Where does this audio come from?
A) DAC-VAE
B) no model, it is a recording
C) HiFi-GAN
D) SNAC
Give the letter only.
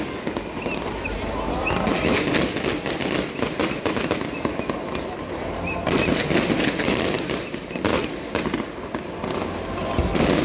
B